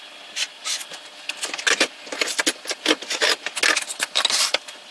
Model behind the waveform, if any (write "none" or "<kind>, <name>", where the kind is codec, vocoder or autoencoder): none